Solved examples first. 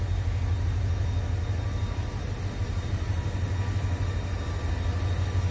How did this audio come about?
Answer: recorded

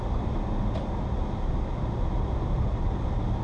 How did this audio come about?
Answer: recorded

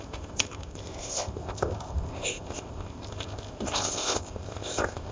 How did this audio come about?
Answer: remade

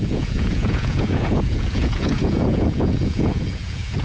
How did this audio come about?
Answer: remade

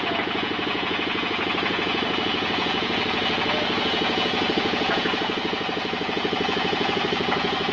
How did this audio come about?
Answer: remade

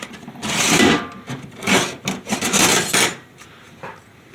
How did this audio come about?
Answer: recorded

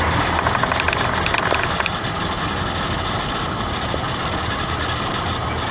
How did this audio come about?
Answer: recorded